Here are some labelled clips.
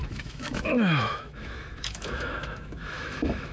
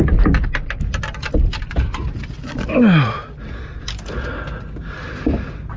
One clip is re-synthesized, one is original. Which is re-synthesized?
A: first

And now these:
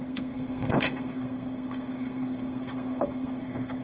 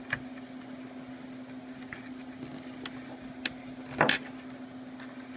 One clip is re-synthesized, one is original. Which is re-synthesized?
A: first